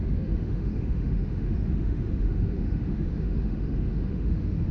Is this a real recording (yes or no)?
no